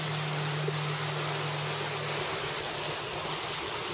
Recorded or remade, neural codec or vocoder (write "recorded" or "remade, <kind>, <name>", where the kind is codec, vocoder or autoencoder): recorded